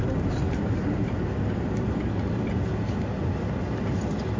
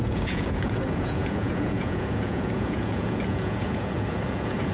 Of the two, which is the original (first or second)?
first